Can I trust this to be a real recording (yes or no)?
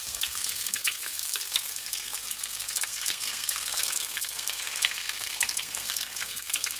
no